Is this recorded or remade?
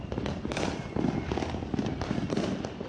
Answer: recorded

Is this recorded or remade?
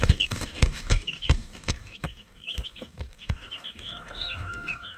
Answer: remade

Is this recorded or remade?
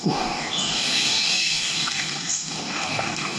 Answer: remade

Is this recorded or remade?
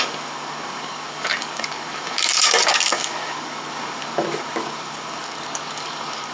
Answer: remade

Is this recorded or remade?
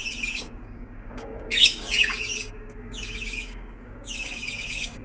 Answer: remade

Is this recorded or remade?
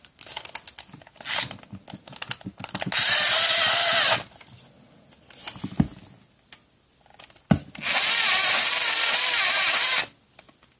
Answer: recorded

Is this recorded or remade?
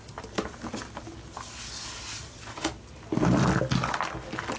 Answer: recorded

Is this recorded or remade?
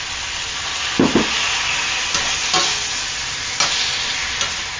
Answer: recorded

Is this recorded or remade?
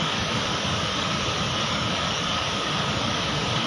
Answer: remade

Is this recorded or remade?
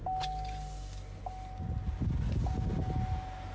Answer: recorded